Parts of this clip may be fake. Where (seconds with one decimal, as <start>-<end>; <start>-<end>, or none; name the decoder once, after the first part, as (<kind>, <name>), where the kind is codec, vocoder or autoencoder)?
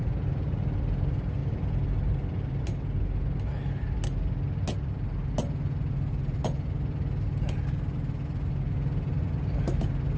none